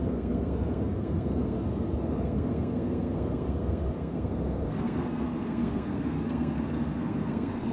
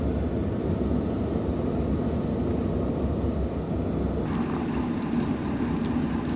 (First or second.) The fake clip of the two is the first